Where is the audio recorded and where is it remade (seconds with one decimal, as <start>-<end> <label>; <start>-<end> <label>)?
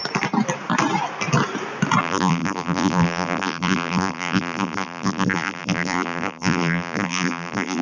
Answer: 0.0-2.0 recorded; 2.0-7.8 remade